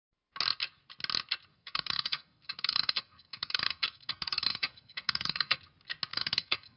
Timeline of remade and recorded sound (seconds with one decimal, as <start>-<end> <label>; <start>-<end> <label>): 0.0-1.5 recorded; 1.5-5.6 remade; 5.6-6.1 recorded; 6.1-6.8 remade